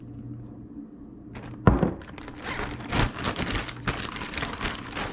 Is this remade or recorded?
recorded